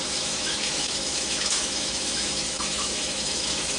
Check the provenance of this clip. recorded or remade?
remade